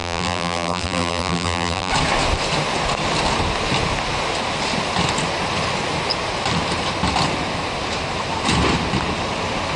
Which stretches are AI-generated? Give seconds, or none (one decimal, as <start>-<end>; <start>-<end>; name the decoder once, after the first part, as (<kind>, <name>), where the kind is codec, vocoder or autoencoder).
0.0-1.9 (vocoder, BigVGAN v2)